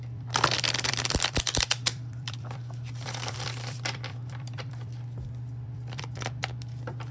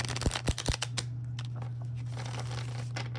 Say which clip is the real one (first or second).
second